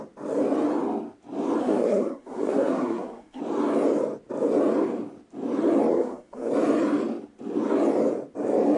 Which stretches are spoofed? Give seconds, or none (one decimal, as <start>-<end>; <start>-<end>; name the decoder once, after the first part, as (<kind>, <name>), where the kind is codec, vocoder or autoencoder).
1.6-3.4 (codec, SNAC); 5.9-6.5